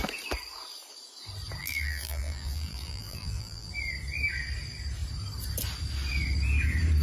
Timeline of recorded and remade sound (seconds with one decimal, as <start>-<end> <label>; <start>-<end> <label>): 0.0-1.6 recorded; 1.6-3.7 remade; 3.7-7.0 recorded

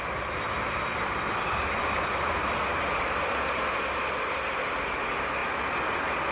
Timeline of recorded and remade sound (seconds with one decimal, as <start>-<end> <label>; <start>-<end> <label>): 0.0-6.3 recorded

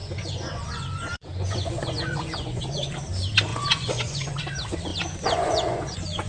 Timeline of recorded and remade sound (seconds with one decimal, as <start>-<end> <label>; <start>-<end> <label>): 0.0-2.9 remade; 2.9-3.5 recorded; 3.5-4.4 remade; 4.4-4.9 recorded; 4.9-6.3 remade

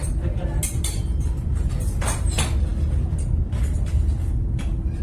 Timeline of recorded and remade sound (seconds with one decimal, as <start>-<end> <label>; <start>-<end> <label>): 0.0-5.0 recorded